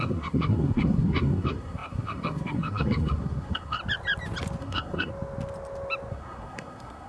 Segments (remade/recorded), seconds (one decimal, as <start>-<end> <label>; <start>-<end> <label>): 0.0-3.8 remade; 3.8-4.6 recorded; 4.6-5.1 remade; 5.1-6.1 recorded; 6.1-7.1 remade